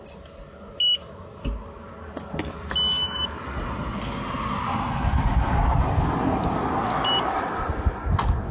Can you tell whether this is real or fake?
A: real